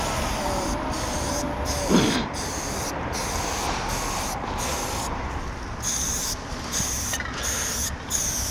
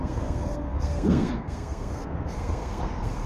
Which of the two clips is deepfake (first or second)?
second